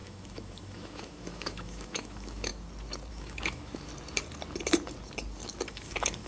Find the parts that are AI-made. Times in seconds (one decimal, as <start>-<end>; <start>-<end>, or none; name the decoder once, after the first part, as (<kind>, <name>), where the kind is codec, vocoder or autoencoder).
0.0-2.5 (autoencoder, DAC-VAE); 3.1-3.9; 5.7-6.3

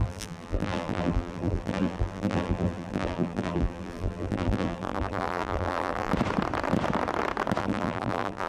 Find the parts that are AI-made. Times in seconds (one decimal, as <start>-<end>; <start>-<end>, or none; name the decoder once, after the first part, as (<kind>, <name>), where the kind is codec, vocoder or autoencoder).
0.0-6.1 (vocoder, BigVGAN v2); 7.6-8.5

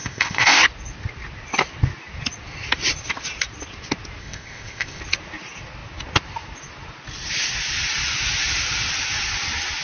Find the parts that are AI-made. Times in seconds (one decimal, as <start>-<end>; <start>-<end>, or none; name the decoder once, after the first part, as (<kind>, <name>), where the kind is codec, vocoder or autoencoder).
0.0-0.6 (codec, ZipCodec); 4.2-5.0

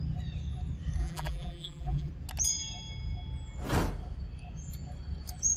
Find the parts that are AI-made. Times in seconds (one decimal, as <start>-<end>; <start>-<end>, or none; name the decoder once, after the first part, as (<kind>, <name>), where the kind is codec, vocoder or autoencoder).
1.0-2.1 (vocoder, BigVGAN v2)

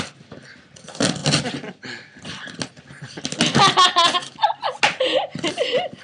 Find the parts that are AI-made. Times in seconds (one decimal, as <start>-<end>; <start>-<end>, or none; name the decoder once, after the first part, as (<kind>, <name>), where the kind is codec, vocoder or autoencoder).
none

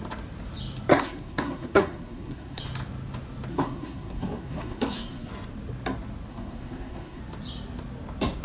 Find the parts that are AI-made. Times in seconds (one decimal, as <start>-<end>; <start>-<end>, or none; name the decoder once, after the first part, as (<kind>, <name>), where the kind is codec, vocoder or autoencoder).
0.9-2.6 (codec, SNAC); 3.5-5.3; 6.3-7.2